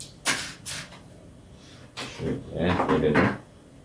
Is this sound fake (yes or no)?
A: no